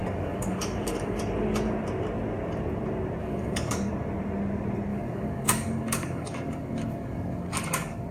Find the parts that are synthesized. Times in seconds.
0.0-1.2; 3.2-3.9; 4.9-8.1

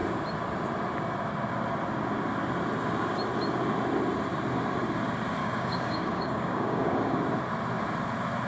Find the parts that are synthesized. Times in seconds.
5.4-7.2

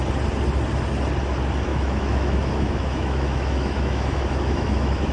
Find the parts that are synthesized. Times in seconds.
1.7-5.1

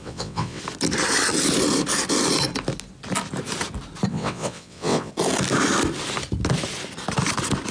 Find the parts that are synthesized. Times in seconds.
0.0-0.6; 4.1-5.1

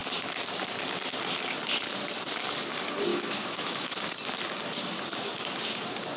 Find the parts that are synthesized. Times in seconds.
3.1-4.0

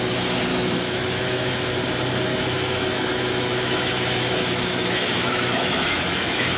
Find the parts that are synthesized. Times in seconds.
0.5-1.5; 2.3-6.6

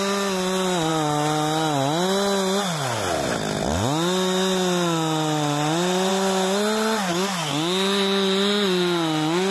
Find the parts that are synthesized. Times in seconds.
none

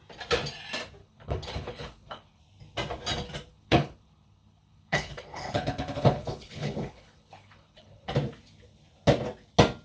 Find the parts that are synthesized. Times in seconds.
1.0-2.4; 3.5-8.1